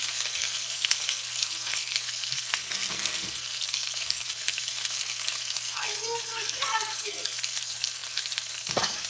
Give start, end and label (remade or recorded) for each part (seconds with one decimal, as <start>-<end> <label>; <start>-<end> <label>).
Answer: 0.0-9.1 remade